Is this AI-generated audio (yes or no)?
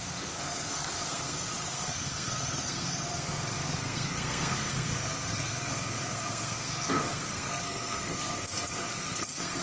yes